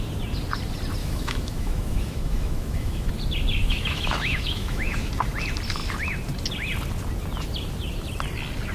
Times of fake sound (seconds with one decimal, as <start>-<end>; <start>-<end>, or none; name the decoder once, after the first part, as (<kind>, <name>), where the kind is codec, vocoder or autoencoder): 1.0-3.1 (autoencoder, DAC-VAE); 3.6-5.1